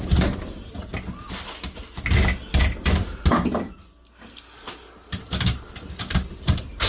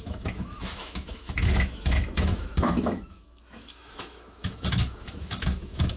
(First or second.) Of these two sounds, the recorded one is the first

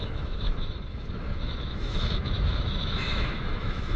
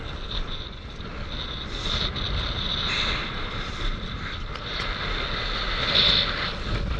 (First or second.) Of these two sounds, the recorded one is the second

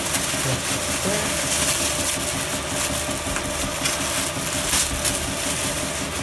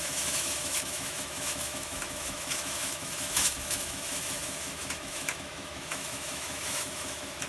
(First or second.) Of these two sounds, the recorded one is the first